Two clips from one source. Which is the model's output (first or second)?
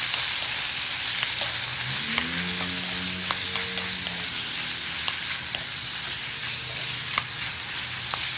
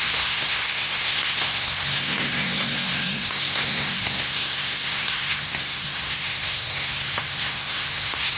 second